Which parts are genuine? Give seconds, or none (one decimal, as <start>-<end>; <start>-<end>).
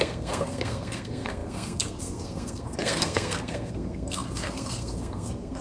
none